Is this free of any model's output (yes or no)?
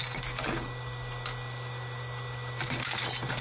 yes